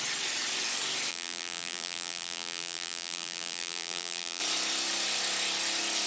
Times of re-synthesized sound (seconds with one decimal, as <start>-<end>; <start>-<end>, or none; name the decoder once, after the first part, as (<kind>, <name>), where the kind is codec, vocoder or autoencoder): 1.1-4.4 (vocoder, BigVGAN v2)